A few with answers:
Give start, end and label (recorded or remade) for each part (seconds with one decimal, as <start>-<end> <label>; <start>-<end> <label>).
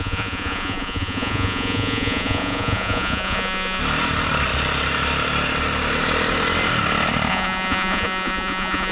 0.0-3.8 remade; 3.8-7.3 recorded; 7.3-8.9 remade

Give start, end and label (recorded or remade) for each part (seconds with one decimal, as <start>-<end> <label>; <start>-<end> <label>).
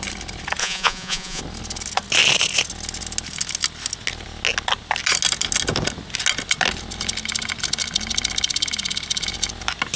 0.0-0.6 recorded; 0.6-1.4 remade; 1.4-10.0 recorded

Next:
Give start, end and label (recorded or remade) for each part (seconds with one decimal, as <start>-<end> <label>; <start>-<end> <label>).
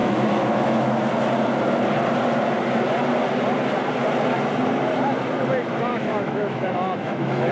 0.0-0.9 remade; 0.9-5.9 recorded; 5.9-7.5 remade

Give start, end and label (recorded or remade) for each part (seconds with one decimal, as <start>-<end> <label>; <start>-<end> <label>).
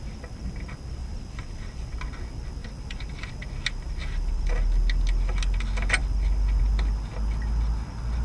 0.0-1.0 recorded; 1.0-1.9 remade; 1.9-2.6 recorded; 2.6-3.3 remade; 3.3-4.0 recorded; 4.0-4.5 remade; 4.5-8.2 recorded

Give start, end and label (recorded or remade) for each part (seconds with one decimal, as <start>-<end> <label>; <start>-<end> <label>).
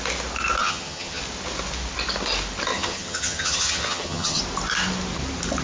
0.0-0.6 recorded; 0.6-1.2 remade; 1.2-2.7 recorded; 2.7-4.4 remade; 4.4-5.6 recorded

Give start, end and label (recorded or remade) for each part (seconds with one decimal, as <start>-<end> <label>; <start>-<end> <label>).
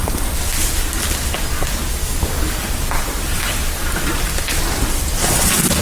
0.0-2.0 recorded; 2.0-2.6 remade; 2.6-5.8 recorded